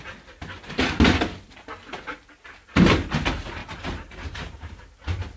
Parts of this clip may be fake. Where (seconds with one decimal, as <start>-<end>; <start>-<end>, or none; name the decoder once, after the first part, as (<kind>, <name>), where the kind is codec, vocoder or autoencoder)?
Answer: 3.6-4.7 (vocoder, BigVGAN v2)